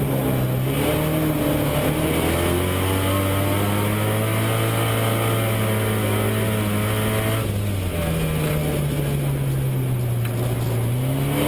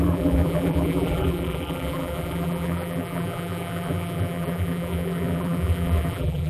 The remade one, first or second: second